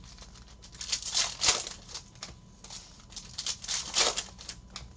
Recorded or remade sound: recorded